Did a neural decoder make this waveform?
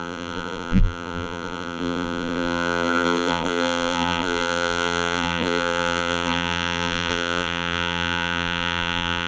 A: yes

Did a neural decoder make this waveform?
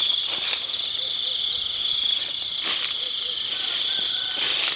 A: no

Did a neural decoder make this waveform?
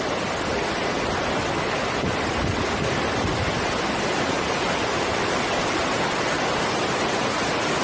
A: no